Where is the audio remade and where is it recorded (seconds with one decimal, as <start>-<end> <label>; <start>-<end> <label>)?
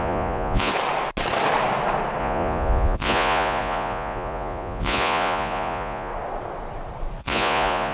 0.0-0.7 remade; 0.7-2.2 recorded; 2.2-6.1 remade; 6.1-7.2 recorded; 7.2-7.9 remade